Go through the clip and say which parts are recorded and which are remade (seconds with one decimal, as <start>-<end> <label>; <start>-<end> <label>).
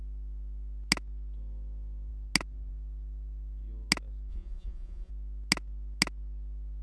0.0-4.3 recorded; 4.3-5.1 remade; 5.1-6.8 recorded